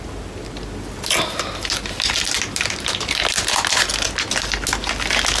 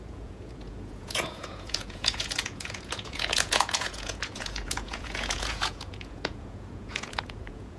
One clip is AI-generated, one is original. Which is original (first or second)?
first